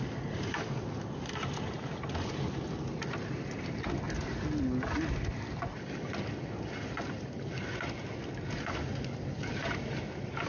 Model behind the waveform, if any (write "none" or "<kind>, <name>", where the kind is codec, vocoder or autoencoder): none